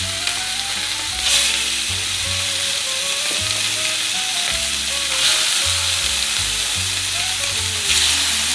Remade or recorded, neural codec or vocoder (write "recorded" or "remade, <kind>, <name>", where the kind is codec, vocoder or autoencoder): recorded